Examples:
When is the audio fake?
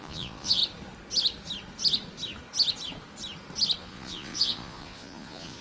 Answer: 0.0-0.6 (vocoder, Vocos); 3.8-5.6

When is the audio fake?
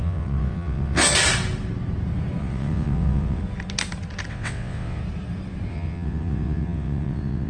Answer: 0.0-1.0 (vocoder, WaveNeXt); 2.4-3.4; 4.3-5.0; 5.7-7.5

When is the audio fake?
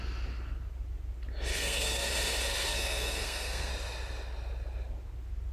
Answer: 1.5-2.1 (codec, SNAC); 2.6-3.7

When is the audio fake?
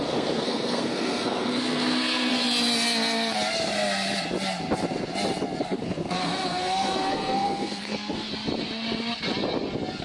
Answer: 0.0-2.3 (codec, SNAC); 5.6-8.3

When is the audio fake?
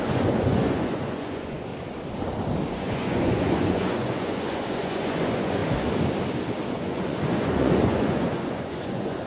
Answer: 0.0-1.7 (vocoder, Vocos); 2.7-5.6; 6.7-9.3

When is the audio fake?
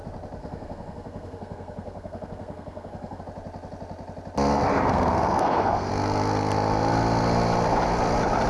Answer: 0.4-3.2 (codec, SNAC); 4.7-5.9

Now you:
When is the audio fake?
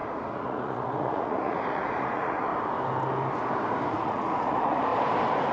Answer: 0.0-2.5 (vocoder, Vocos); 3.9-4.9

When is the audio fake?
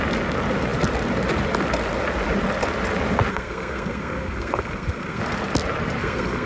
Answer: 3.3-5.2 (codec, SNAC); 6.0-6.5